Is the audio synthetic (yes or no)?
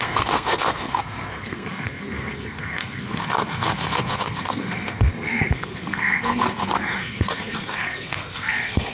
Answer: yes